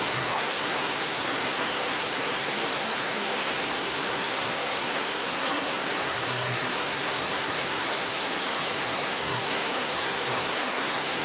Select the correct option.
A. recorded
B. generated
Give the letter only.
B